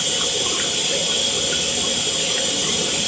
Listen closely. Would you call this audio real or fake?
real